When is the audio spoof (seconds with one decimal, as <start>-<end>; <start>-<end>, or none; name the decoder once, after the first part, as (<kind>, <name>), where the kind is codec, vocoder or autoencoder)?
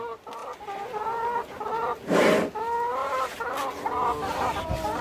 none